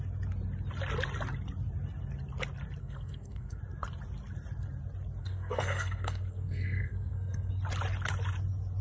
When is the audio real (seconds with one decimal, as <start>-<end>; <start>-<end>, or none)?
0.0-2.8; 3.6-5.2; 7.5-8.8